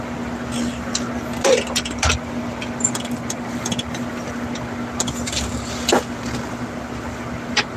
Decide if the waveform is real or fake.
real